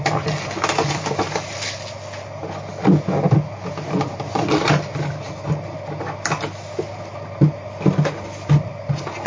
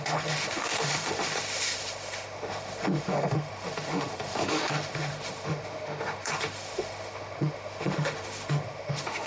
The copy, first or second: second